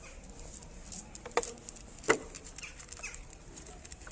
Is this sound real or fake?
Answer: real